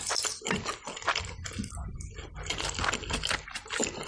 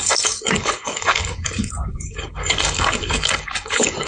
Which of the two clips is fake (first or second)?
second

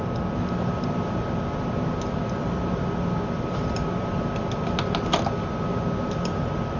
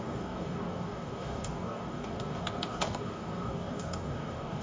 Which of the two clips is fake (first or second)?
second